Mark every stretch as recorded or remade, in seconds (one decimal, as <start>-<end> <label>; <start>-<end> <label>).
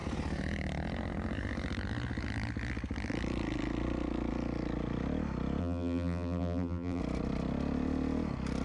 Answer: 0.0-5.6 recorded; 5.6-7.0 remade; 7.0-8.6 recorded